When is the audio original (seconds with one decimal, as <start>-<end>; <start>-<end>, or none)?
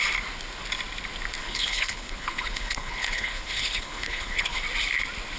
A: 0.0-1.4; 4.6-5.4